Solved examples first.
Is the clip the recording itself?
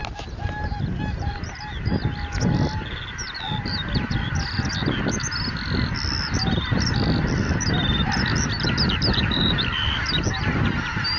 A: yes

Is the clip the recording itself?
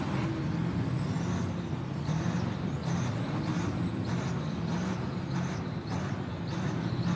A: yes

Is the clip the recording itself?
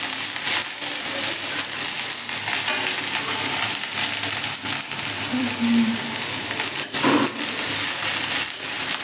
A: yes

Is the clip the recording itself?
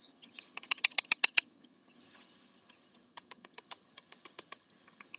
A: no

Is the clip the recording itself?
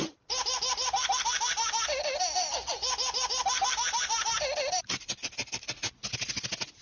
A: yes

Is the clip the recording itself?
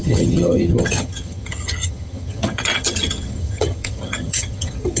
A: no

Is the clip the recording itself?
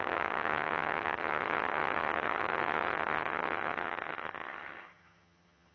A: no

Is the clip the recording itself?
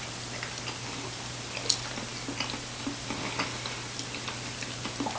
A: yes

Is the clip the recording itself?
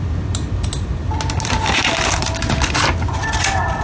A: yes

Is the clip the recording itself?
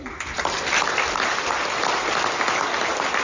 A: yes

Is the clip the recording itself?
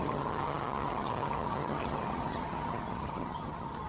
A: no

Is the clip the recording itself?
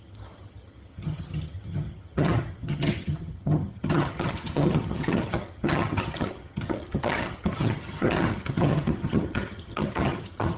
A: no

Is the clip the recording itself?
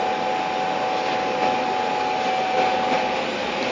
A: yes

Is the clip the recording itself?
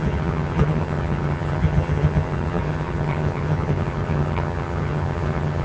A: no